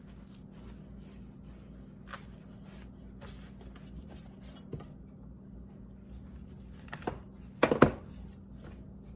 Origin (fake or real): real